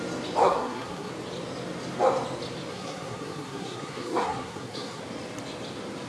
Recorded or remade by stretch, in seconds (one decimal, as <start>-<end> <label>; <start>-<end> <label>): 0.0-0.4 recorded; 0.4-1.1 remade; 1.1-2.7 recorded; 2.7-5.0 remade; 5.0-6.1 recorded